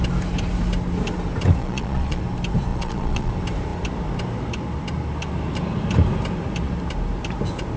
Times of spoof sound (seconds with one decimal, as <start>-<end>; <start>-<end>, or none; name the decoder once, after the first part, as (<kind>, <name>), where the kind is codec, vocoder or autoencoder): 1.6-2.2 (vocoder, Vocos); 2.7-3.3